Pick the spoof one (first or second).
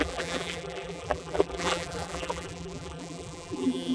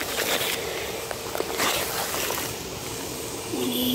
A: first